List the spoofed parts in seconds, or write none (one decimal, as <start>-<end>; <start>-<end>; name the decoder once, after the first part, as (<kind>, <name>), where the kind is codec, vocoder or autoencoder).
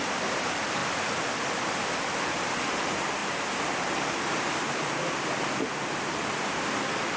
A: 0.8-2.2 (vocoder, BigVGAN v2)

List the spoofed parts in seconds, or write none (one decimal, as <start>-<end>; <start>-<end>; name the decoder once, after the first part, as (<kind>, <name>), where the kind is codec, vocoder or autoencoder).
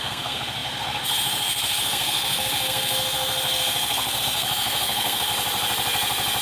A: 0.0-5.3 (codec, SNAC)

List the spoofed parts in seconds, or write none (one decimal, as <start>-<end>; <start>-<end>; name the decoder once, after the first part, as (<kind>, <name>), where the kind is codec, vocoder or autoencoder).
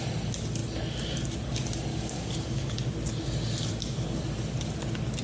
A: 1.9-2.8 (codec, DAC); 3.7-4.2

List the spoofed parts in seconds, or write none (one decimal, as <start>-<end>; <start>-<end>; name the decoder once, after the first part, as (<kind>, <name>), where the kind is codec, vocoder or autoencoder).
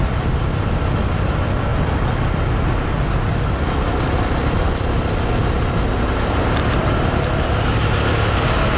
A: none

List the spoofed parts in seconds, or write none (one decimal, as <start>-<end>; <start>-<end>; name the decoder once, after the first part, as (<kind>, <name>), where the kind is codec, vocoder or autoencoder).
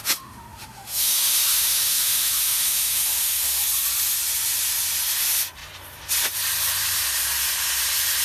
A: 0.0-3.6 (autoencoder, DAC-VAE)